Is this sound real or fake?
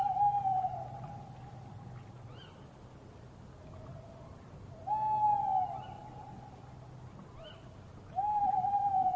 real